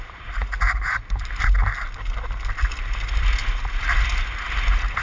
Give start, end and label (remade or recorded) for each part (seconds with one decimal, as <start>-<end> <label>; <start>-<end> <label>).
0.0-5.0 recorded